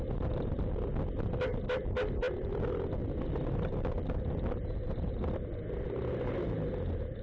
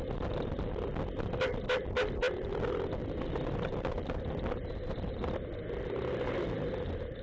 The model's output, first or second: second